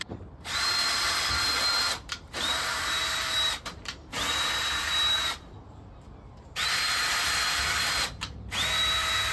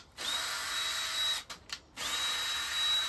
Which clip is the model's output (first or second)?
first